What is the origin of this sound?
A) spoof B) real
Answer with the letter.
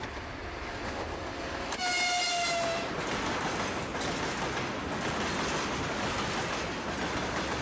B